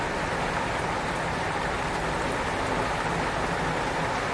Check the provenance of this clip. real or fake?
real